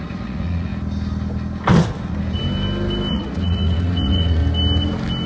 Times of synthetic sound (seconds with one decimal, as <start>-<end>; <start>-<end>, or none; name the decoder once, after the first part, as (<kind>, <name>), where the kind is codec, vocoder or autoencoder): 0.0-0.7 (vocoder, Vocos); 3.1-4.4